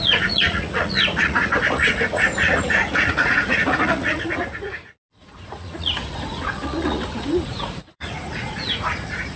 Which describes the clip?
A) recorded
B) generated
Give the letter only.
B